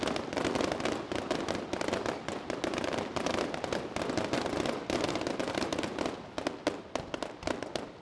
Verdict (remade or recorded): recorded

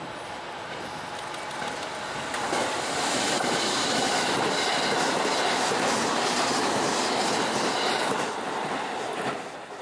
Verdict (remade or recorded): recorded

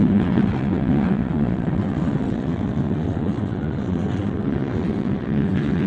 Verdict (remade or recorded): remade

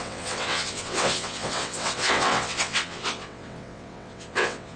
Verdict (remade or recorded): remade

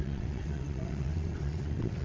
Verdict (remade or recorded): remade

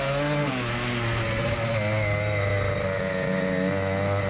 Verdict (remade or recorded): recorded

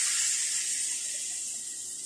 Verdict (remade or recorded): recorded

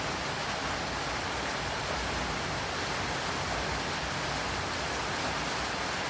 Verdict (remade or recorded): recorded